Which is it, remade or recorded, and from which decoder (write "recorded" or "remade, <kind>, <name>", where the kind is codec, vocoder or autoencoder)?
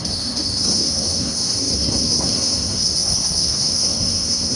remade, codec, SNAC